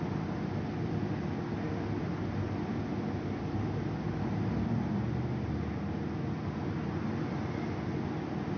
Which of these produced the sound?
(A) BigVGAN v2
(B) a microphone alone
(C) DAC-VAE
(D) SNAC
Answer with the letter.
B